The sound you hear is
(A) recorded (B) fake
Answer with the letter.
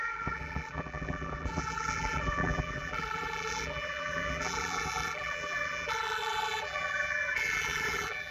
B